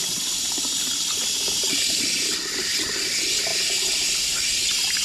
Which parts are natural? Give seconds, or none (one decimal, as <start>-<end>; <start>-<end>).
3.0-3.5; 4.5-5.0